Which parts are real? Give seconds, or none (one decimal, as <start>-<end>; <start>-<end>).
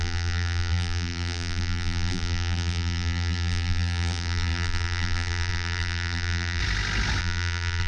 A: 6.6-7.2